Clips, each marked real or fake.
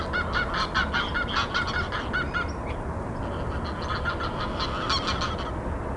real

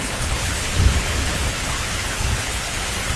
fake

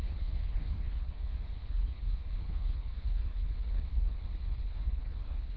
fake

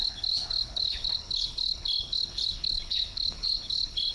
fake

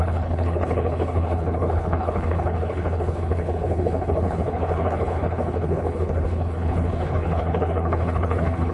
fake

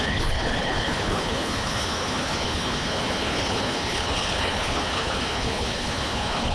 fake